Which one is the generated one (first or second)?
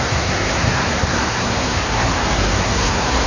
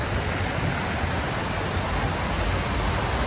first